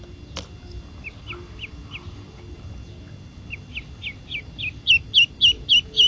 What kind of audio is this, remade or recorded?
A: recorded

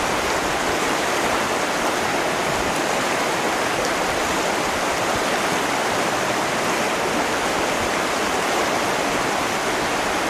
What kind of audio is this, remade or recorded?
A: recorded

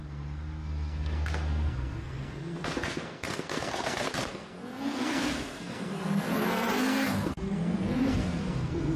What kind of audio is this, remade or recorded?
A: remade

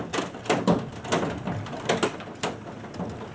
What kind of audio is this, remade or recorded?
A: recorded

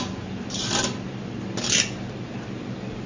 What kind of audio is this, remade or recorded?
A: recorded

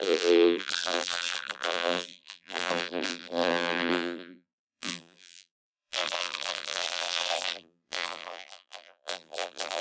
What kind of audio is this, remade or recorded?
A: remade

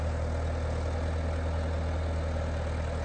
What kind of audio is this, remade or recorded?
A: recorded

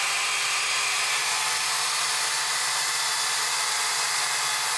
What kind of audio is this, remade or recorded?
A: recorded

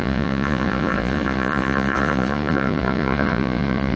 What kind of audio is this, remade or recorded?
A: remade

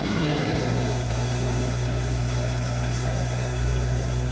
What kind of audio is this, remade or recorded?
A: remade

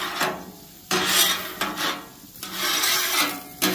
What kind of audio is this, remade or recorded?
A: recorded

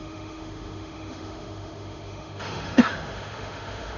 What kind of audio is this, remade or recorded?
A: remade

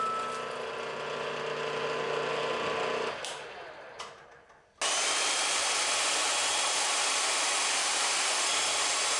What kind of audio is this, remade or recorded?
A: recorded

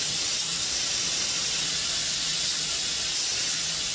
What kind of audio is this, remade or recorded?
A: recorded